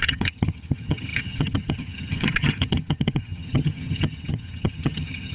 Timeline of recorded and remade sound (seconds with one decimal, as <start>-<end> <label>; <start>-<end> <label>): 0.0-5.3 remade